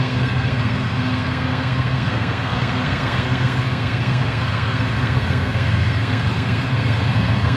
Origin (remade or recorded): remade